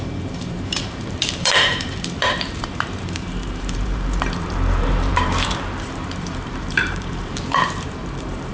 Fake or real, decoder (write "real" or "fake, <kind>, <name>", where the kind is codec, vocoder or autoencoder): fake, vocoder, BigVGAN v2